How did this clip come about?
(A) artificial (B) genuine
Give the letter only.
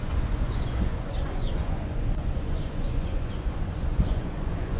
A